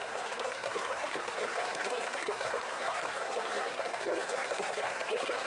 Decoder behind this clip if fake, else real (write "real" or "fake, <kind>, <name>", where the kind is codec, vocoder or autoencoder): fake, codec, SNAC